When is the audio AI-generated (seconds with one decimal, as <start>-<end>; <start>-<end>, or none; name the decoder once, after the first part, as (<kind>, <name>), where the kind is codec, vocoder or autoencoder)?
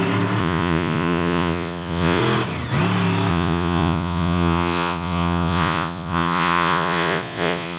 0.4-2.2 (vocoder, Vocos); 3.3-7.8